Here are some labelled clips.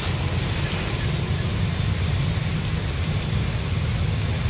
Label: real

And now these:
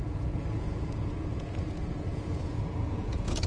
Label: fake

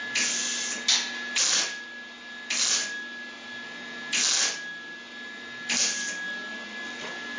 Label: real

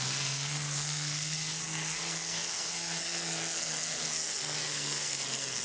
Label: fake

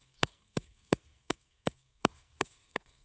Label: fake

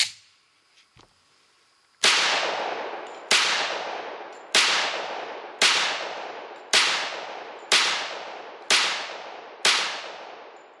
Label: real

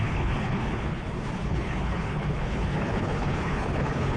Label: fake